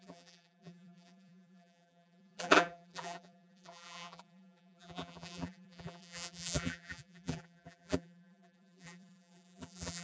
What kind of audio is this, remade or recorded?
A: remade